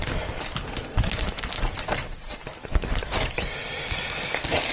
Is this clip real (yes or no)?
yes